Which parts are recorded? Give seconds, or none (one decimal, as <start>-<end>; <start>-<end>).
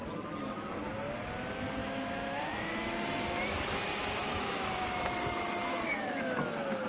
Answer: 0.7-1.8; 3.8-4.2